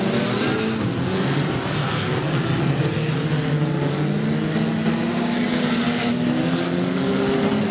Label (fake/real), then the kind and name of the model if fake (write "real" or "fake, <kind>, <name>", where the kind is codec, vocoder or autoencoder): real